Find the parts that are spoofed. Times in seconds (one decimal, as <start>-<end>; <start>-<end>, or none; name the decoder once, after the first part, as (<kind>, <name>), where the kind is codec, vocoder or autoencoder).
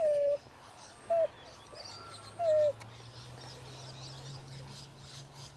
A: 0.0-0.9 (codec, HILCodec); 4.3-5.6